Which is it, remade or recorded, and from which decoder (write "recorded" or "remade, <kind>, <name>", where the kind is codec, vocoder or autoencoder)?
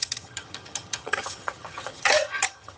remade, vocoder, HiFi-GAN